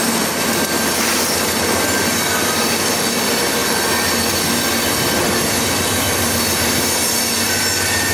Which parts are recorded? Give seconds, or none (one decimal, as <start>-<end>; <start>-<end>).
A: 0.0-8.1